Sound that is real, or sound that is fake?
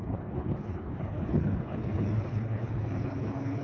fake